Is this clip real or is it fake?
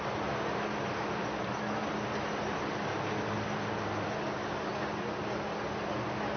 real